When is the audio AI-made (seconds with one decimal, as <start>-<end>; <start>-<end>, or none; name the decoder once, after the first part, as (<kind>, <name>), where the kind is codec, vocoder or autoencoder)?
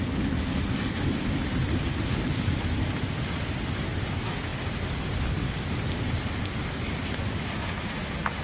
none